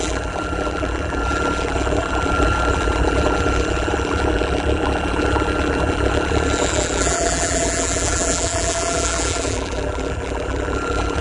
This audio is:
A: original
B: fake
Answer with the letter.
B